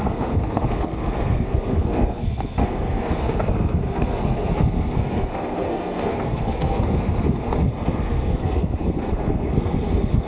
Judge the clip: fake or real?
fake